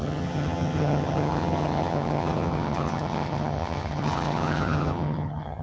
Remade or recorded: remade